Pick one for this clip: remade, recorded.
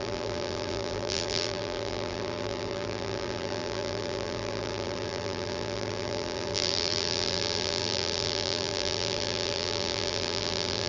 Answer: remade